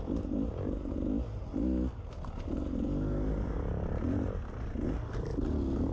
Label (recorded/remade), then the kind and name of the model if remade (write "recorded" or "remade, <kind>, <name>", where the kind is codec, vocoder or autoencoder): recorded